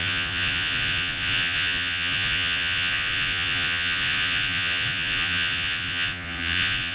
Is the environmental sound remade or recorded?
remade